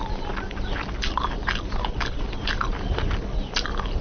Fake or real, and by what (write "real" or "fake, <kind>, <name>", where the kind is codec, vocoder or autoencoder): real